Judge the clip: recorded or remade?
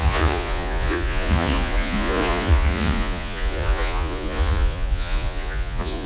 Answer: remade